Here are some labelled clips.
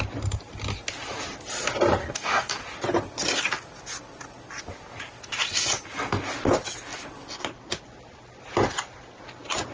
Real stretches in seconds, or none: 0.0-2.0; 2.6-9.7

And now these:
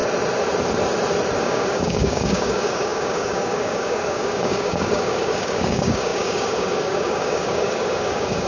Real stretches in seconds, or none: 0.0-1.4

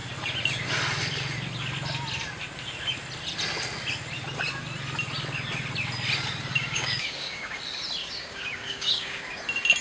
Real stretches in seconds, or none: 0.0-6.5; 7.6-8.0; 9.4-9.8

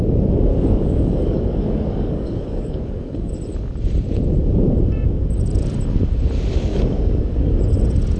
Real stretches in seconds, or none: 0.0-0.5; 3.3-6.7; 7.6-8.2

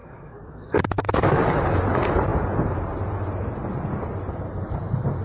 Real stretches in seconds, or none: 1.4-5.2

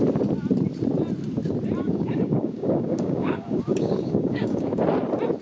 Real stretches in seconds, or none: 0.0-1.8; 4.8-5.4

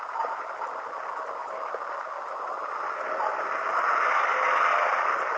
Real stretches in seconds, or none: 0.0-5.4